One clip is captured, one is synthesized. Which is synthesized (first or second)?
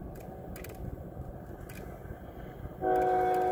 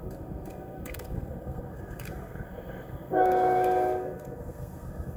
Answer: second